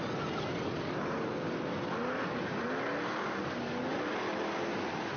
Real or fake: real